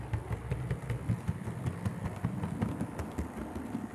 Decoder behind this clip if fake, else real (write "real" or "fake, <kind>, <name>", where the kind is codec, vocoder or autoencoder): real